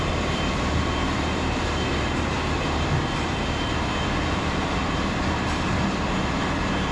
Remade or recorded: remade